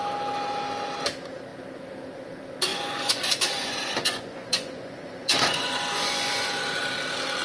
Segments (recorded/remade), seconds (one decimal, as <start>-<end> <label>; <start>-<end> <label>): 0.0-2.7 recorded; 2.7-6.8 remade; 6.8-7.4 recorded